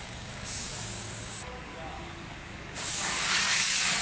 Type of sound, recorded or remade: remade